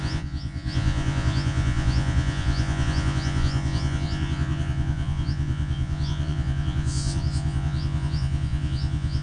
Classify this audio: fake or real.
fake